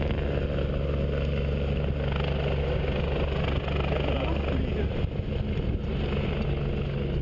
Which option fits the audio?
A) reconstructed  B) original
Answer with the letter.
B